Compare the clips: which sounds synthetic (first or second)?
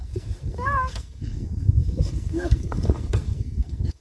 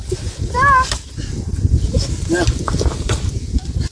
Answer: first